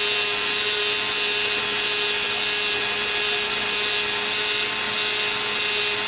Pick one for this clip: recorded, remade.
recorded